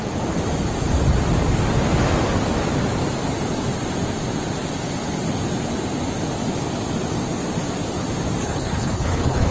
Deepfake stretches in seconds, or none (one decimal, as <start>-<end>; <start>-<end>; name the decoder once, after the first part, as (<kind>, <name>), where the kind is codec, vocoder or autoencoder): 8.4-9.5 (codec, HILCodec)